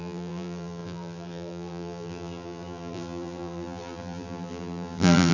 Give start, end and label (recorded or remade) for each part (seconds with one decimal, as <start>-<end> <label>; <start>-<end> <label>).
0.0-5.3 remade